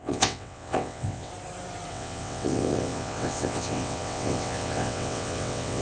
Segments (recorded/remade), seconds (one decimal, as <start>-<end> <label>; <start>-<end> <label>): 0.0-1.3 remade; 1.3-1.9 recorded; 1.9-5.8 remade